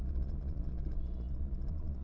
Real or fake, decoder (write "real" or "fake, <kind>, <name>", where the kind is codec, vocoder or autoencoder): fake, vocoder, Vocos